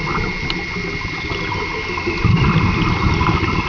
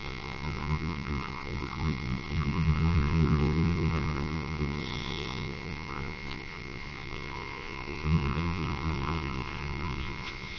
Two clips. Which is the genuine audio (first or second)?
first